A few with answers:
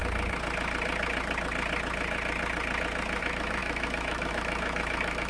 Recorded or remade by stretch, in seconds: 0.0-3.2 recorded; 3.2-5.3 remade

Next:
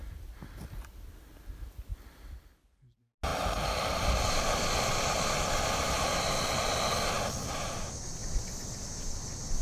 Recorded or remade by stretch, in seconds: 0.0-9.6 recorded

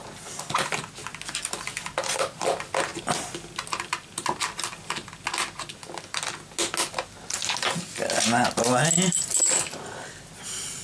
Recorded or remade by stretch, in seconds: 0.0-10.8 recorded

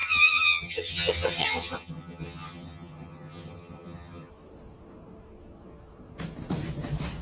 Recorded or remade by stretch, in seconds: 0.0-4.3 remade; 4.3-7.2 recorded

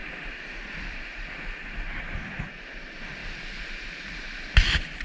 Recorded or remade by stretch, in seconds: 0.0-2.4 remade; 2.4-3.2 recorded; 3.2-3.7 remade; 3.7-5.0 recorded

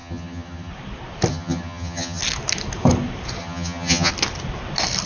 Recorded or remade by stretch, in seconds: 0.0-0.7 remade; 0.7-1.3 recorded; 1.3-2.2 remade; 2.2-3.4 recorded; 3.4-4.1 remade; 4.1-5.1 recorded